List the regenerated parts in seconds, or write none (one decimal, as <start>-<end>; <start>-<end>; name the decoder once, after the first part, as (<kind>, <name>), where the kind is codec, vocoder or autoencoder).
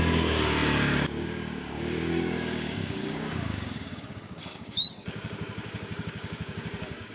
0.0-7.1 (codec, DAC)